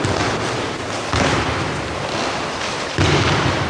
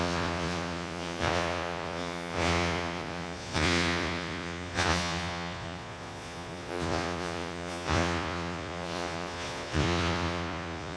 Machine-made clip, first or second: second